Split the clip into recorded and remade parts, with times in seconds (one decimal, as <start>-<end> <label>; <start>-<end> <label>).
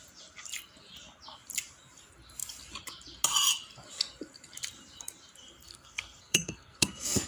0.0-5.6 recorded; 5.6-7.3 remade